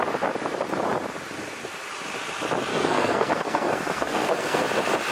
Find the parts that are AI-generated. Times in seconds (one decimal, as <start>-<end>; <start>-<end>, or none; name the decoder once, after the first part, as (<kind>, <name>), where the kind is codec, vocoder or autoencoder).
2.7-4.6 (codec, SNAC)